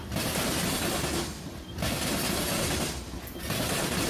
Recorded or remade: recorded